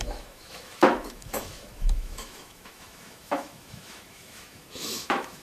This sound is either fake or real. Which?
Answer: fake